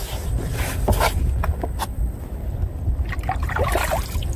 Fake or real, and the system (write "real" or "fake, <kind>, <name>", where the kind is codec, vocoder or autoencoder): real